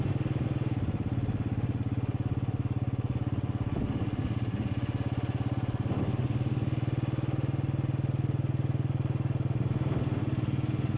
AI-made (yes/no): no